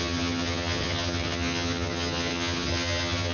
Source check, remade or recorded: remade